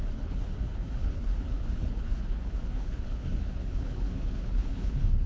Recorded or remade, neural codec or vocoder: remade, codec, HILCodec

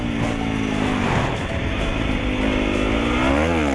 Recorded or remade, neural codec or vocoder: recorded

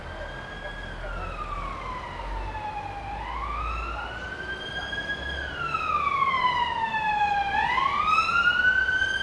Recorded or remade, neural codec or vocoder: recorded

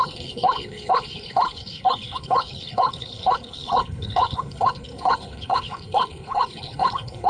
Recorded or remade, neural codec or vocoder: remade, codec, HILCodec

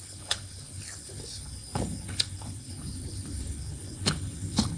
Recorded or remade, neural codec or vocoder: remade, codec, HILCodec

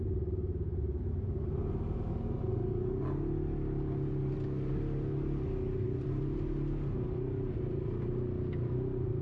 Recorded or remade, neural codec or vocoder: recorded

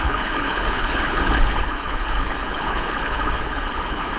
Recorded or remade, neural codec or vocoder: remade, codec, HILCodec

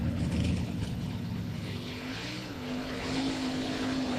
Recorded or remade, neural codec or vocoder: remade, codec, HILCodec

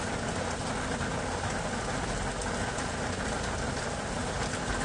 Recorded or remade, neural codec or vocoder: recorded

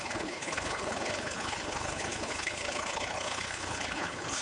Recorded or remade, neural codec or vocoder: remade, codec, HILCodec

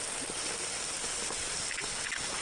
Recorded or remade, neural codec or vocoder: recorded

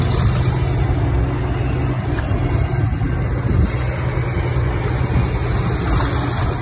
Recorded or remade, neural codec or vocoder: recorded